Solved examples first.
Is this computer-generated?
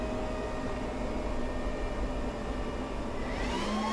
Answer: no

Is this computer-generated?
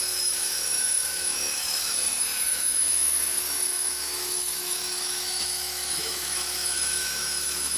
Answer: yes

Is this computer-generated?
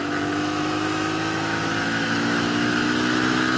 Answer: yes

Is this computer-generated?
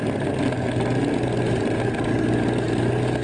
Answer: no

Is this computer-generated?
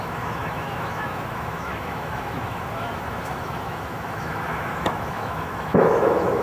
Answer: yes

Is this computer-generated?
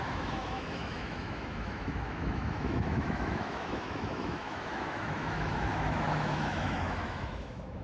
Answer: yes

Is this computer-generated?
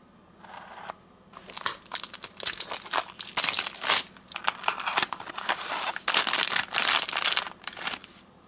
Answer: no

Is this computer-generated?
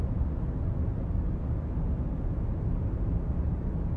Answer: no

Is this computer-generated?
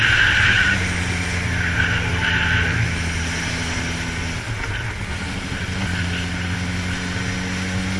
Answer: no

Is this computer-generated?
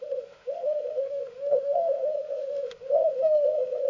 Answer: yes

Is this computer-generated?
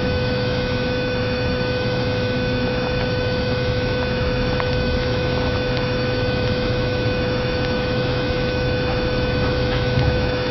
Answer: yes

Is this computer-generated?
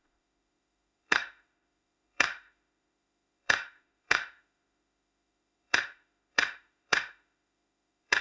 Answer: yes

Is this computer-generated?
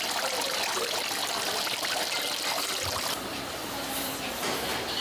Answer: no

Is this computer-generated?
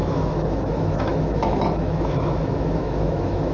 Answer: yes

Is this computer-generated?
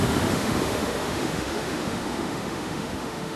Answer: yes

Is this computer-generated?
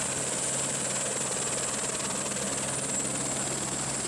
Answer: no